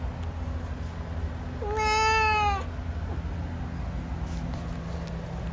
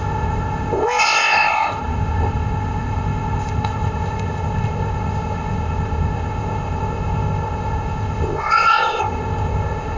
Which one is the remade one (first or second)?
second